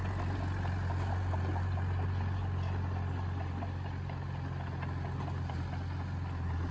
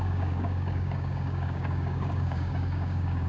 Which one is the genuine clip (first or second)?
first